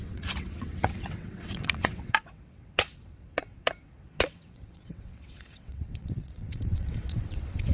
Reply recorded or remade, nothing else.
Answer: remade